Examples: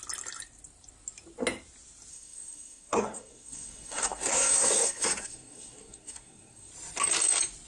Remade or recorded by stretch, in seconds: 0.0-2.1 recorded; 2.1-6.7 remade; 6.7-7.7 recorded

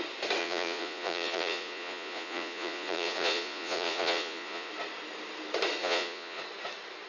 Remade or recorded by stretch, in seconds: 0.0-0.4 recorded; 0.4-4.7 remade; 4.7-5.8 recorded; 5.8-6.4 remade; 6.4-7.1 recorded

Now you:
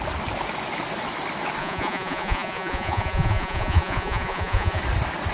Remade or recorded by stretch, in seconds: 0.0-1.6 recorded; 1.6-4.8 remade; 4.8-5.3 recorded